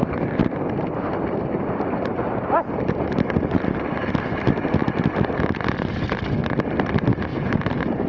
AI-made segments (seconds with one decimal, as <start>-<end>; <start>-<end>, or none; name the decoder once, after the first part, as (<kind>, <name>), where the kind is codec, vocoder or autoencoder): 0.0-4.1 (vocoder, BigVGAN v2); 7.3-8.1